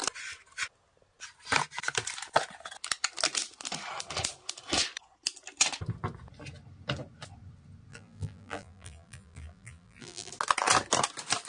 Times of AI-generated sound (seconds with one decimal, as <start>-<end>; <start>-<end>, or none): 7.9-10.3